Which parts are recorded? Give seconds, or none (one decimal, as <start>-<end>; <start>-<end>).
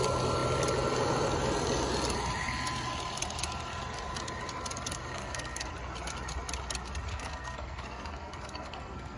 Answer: 0.0-5.1; 5.7-7.1